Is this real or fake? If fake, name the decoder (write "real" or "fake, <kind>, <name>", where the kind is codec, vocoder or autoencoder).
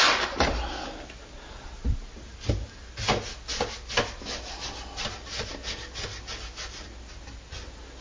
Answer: real